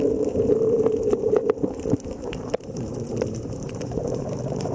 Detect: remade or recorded remade